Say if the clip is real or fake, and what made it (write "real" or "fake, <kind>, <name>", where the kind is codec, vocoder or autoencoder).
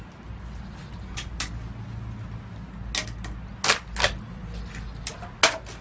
real